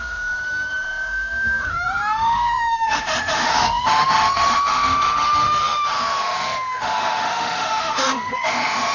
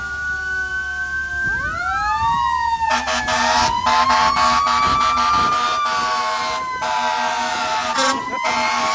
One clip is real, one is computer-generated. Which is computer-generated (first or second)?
first